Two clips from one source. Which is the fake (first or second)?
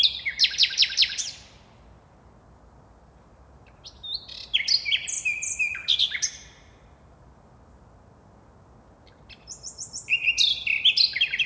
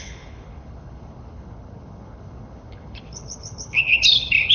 second